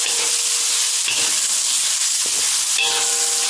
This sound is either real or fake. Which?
real